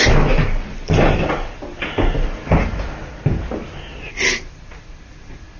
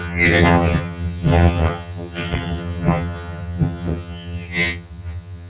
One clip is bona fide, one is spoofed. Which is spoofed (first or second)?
second